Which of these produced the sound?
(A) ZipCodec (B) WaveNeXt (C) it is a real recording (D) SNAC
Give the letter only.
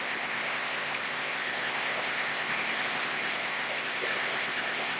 A